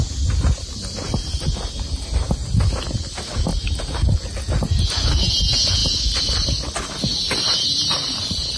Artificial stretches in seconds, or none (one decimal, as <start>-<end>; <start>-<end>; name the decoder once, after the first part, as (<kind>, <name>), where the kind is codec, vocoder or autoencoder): none